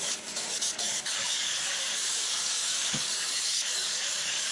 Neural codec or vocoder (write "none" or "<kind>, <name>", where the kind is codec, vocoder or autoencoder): codec, DAC